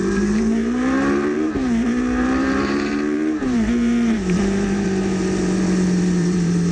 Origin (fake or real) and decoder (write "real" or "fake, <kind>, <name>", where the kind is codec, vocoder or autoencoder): fake, vocoder, BigVGAN v2